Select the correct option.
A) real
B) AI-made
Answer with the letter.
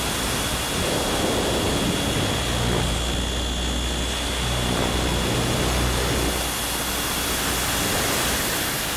A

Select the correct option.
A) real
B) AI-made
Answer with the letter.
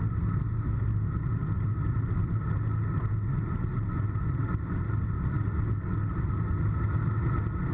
A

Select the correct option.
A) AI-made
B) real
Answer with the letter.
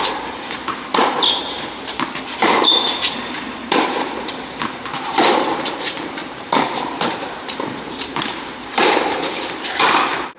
A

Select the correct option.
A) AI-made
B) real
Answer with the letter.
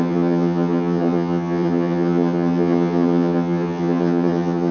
A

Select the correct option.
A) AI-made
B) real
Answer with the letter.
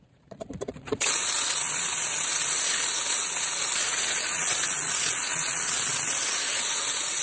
A